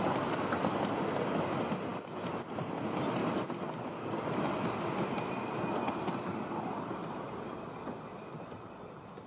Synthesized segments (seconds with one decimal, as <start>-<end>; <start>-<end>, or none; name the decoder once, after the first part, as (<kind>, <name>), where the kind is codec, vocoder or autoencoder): none